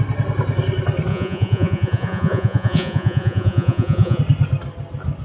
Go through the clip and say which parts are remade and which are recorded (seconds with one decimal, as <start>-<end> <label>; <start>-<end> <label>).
0.0-1.1 recorded; 1.1-4.2 remade; 4.2-5.2 recorded